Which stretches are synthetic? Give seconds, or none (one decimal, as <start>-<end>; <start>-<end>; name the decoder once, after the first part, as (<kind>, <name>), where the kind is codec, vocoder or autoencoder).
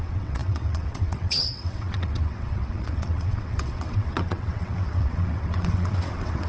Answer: 0.0-6.5 (vocoder, WaveNeXt)